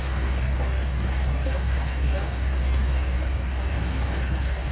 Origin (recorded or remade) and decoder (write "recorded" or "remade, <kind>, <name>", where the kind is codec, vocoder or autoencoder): remade, codec, DAC